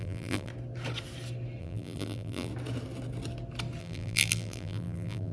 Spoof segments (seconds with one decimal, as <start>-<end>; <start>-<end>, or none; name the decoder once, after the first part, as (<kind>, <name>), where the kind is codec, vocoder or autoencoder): 0.0-0.5 (vocoder, BigVGAN v2); 1.6-2.5; 3.8-5.3